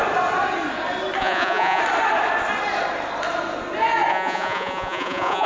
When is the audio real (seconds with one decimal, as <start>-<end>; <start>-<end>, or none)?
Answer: 0.0-1.2; 1.8-4.1